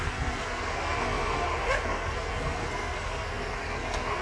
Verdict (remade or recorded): remade